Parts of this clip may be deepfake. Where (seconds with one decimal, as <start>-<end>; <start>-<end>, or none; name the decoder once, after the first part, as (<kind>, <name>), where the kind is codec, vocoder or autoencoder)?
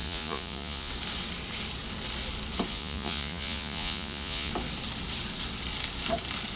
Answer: 0.0-0.9 (vocoder, Vocos); 2.7-4.5